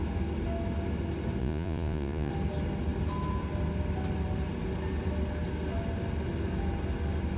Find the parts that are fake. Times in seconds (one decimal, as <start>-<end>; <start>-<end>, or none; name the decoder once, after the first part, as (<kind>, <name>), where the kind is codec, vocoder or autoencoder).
1.4-2.3 (vocoder, Vocos)